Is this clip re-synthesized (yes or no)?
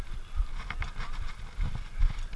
no